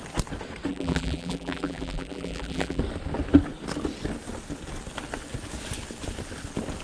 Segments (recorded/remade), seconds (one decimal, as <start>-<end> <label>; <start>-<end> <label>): 0.0-0.7 recorded; 0.7-2.8 remade; 2.8-6.8 recorded